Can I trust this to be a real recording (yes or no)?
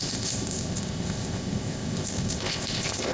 no